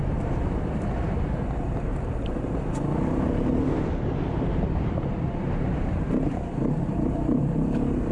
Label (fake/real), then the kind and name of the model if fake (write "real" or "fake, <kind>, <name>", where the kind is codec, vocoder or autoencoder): fake, vocoder, BigVGAN v2